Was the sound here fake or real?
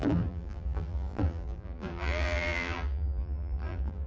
fake